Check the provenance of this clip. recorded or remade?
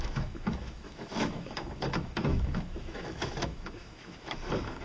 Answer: remade